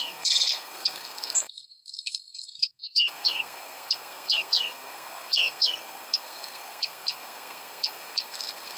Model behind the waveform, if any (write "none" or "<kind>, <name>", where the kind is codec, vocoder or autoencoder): codec, SNAC